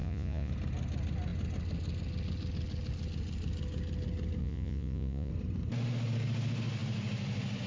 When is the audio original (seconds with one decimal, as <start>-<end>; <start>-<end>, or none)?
0.5-4.4; 5.3-7.7